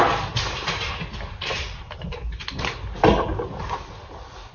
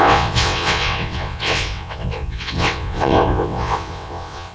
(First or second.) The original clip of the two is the first